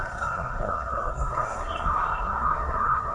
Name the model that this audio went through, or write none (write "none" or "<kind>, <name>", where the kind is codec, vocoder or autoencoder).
codec, SNAC